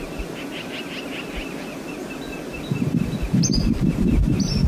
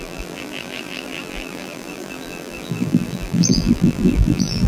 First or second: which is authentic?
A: first